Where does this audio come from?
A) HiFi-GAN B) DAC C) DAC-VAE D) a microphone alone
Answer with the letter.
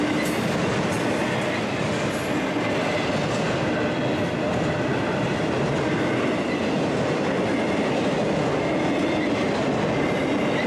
D